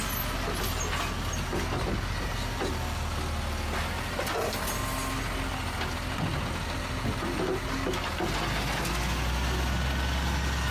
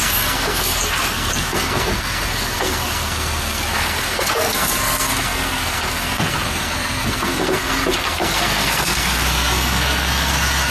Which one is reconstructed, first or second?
second